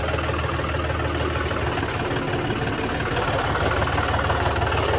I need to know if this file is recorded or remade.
recorded